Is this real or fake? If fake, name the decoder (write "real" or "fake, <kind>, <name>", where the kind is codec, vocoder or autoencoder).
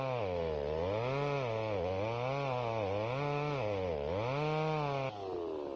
real